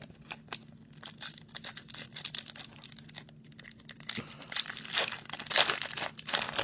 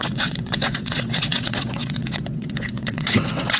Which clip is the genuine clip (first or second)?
first